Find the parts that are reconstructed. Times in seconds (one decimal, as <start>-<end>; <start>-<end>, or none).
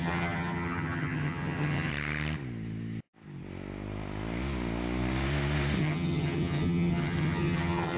0.0-1.9; 5.8-8.0